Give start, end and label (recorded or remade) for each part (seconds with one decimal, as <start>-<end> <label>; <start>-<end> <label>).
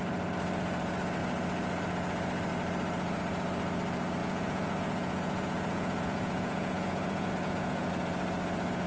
0.0-4.2 recorded; 4.2-7.9 remade; 7.9-8.9 recorded